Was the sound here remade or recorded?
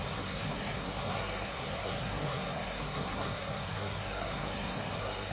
remade